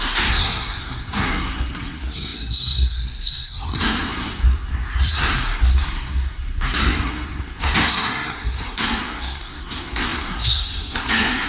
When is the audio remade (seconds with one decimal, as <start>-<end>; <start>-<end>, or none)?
0.0-11.5